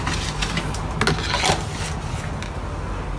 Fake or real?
real